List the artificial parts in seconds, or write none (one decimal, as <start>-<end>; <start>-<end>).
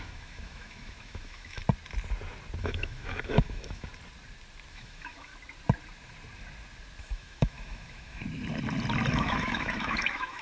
0.0-1.6; 2.6-3.9; 4.7-5.3; 7.0-8.2; 9.1-10.4